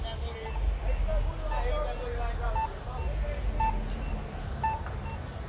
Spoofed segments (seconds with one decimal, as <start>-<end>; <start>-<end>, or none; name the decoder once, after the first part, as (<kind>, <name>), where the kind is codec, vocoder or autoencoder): none